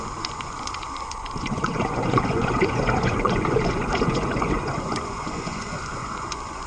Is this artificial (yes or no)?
yes